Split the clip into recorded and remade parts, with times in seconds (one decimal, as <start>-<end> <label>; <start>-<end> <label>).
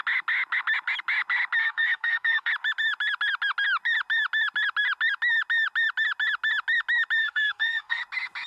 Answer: 0.0-1.6 recorded; 1.6-2.5 remade; 2.5-7.2 recorded; 7.2-8.0 remade; 8.0-8.5 recorded